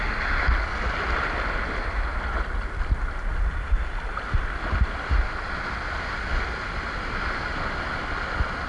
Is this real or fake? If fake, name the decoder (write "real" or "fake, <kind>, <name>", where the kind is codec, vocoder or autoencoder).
real